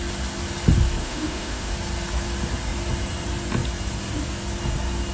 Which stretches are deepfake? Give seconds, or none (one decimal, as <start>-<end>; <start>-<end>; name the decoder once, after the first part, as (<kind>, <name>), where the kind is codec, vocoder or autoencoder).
1.0-1.7 (autoencoder, DAC-VAE)